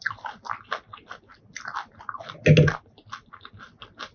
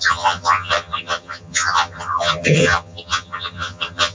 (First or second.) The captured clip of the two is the first